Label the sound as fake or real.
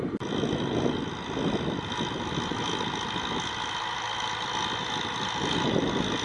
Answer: real